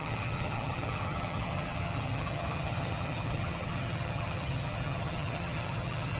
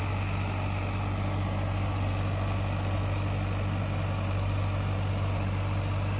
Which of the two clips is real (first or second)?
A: second